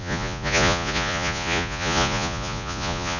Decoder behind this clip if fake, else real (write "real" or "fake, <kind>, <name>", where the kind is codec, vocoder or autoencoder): fake, vocoder, Vocos